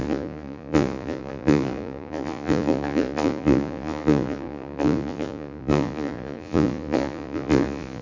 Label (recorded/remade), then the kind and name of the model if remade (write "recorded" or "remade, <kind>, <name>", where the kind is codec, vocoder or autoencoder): remade, vocoder, Vocos